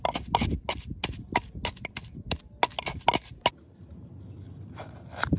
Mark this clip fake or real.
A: real